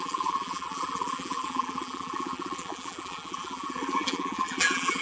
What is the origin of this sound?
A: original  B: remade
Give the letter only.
B